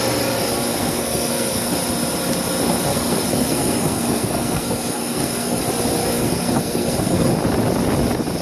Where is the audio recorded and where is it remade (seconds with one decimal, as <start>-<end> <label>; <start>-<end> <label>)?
0.0-0.7 recorded; 0.7-1.7 remade; 1.7-2.9 recorded; 2.9-5.6 remade; 5.6-6.0 recorded; 6.0-7.3 remade; 7.3-8.4 recorded